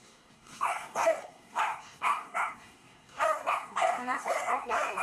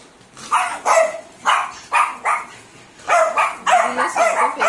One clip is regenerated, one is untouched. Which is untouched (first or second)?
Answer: second